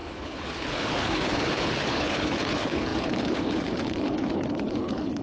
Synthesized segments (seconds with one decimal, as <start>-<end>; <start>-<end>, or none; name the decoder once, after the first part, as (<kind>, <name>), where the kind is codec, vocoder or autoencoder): 0.0-5.2 (codec, HILCodec)